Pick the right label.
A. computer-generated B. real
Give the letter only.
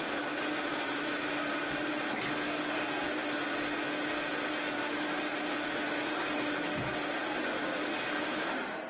B